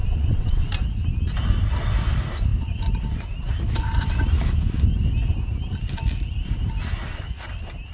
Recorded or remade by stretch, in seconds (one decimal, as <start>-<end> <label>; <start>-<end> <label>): 0.0-0.7 remade; 0.7-7.9 recorded

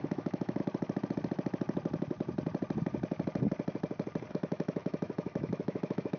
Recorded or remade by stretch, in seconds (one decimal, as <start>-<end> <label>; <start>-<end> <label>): 0.0-0.6 remade; 0.6-4.3 recorded; 4.3-6.2 remade

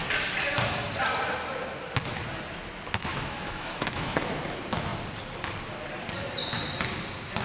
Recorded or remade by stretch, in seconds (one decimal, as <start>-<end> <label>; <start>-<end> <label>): 0.0-3.1 recorded; 3.1-4.4 remade; 4.4-7.4 recorded

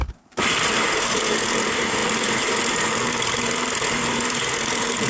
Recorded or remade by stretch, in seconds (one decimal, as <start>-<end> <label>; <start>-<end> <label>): 0.0-5.1 remade

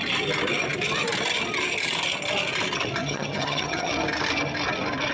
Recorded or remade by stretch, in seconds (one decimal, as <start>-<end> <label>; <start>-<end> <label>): 0.0-3.0 recorded; 3.0-3.9 remade; 3.9-5.1 recorded

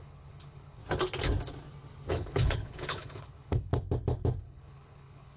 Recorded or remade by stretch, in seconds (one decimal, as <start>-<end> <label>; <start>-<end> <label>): 0.0-0.8 remade; 0.8-2.1 recorded; 2.1-3.7 remade; 3.7-4.4 recorded; 4.4-5.4 remade